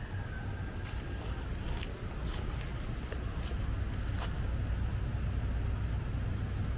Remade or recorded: recorded